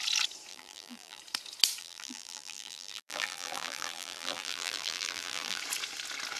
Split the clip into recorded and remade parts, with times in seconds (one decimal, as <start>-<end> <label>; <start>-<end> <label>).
0.0-0.5 recorded; 0.5-1.2 remade; 1.2-1.8 recorded; 1.8-5.6 remade; 5.6-6.4 recorded